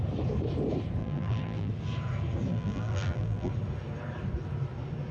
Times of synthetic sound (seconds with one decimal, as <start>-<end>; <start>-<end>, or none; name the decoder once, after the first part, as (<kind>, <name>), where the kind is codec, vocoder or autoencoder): 1.0-1.7 (vocoder, BigVGAN v2); 2.5-3.5